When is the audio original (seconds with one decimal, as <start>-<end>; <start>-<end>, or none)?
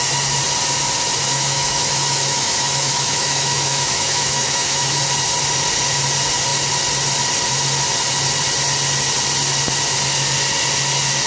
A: 0.0-1.3; 5.0-11.3